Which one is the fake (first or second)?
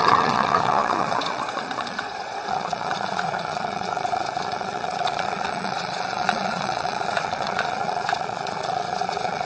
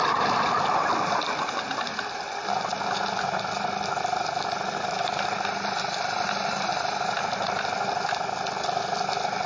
first